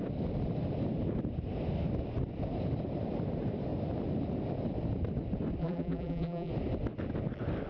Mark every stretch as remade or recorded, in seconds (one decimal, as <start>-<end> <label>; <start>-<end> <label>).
0.0-5.6 recorded; 5.6-6.5 remade; 6.5-7.7 recorded